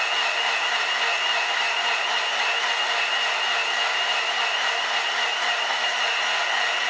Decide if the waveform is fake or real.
real